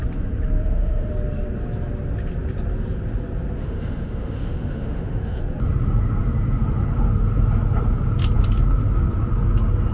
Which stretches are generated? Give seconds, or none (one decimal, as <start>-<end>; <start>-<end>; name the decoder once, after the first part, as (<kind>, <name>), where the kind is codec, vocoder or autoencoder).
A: 0.6-1.1 (autoencoder, DAC-VAE); 3.6-5.4